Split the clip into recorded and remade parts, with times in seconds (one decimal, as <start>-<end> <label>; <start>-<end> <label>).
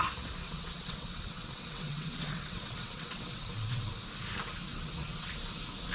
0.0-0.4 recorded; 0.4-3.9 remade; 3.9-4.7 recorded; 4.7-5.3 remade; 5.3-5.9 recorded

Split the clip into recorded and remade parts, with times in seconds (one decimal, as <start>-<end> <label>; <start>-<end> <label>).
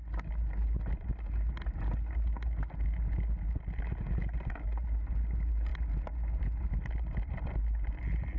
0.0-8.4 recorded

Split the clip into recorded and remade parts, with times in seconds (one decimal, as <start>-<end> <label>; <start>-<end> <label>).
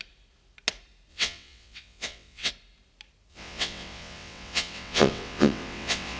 0.0-1.1 recorded; 1.1-2.5 remade; 2.5-3.3 recorded; 3.3-6.2 remade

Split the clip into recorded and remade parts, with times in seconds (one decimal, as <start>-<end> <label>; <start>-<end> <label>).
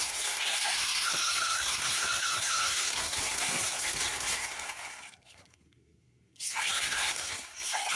0.0-8.0 remade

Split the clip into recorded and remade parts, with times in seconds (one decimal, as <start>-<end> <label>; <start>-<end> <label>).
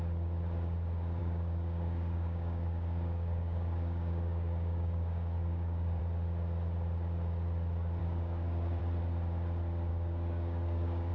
0.0-1.2 recorded; 1.2-6.0 remade; 6.0-8.0 recorded; 8.0-8.8 remade; 8.8-9.9 recorded; 9.9-11.1 remade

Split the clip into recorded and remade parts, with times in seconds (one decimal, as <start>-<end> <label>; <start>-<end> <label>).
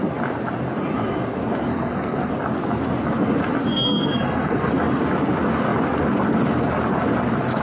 0.0-1.7 recorded; 1.7-2.3 remade; 2.3-3.7 recorded; 3.7-4.7 remade; 4.7-7.6 recorded